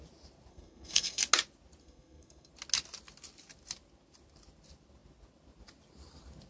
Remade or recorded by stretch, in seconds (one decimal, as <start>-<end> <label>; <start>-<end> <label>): 0.0-0.5 recorded; 0.5-1.2 remade; 1.2-1.8 recorded; 1.8-2.5 remade; 2.5-6.5 recorded